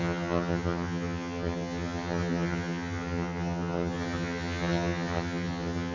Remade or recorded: remade